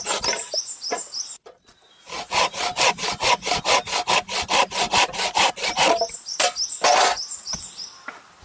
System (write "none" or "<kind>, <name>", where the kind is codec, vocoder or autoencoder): none